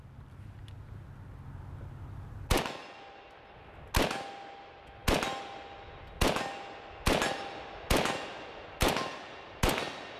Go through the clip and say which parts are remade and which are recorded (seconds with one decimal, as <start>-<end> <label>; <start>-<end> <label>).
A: 0.0-10.2 recorded